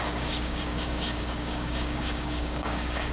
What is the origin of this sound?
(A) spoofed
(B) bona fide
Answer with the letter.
A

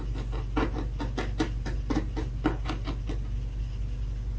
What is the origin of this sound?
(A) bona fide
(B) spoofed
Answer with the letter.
A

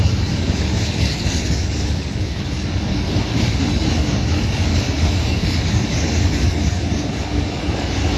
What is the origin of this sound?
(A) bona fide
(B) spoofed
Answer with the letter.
B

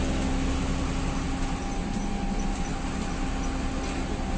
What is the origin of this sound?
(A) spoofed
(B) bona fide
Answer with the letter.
B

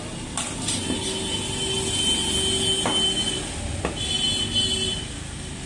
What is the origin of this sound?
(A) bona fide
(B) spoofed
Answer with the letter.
A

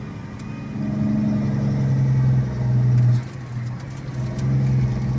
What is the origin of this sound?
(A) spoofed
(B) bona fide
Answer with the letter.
B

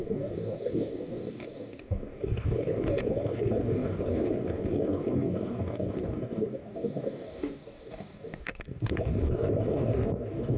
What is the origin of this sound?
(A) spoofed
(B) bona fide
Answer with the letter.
A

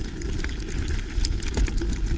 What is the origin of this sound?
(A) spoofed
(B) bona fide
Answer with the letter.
B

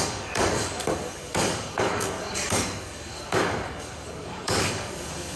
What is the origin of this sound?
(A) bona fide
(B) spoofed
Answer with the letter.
B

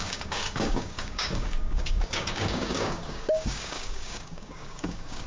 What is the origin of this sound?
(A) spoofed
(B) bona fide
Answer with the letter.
A